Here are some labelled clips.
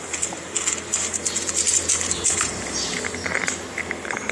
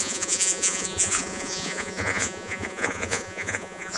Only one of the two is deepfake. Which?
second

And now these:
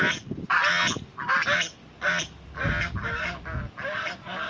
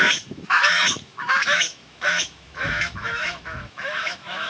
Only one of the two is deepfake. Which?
second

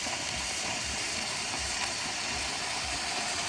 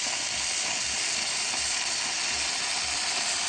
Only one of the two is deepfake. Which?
first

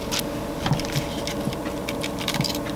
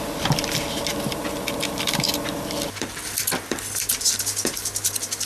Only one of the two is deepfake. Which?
second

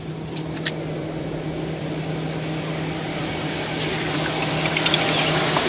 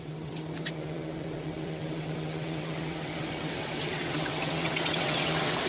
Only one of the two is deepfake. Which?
second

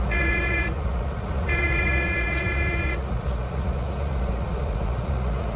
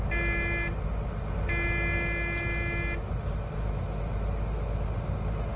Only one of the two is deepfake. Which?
first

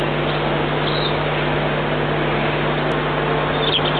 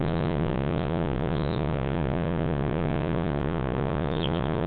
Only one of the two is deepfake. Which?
second